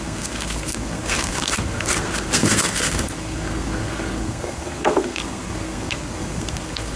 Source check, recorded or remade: remade